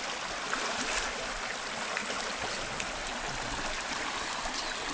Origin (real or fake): real